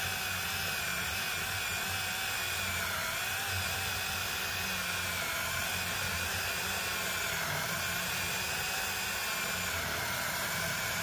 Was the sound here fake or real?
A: real